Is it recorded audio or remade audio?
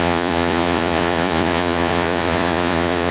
remade